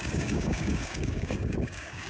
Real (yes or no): no